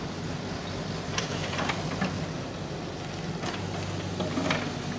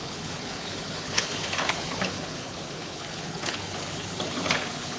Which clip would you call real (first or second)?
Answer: first